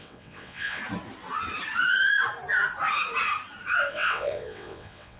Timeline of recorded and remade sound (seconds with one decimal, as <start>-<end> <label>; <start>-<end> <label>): 0.0-0.8 remade; 0.8-3.9 recorded; 3.9-5.2 remade